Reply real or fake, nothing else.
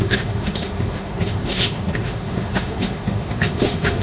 fake